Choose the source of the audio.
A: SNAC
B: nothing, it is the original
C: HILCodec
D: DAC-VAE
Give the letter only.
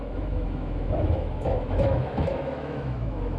D